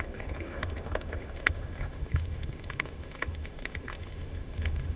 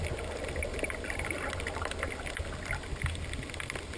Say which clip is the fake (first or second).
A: first